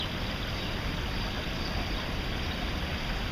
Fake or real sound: real